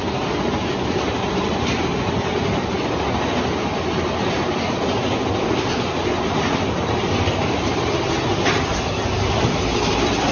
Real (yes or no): yes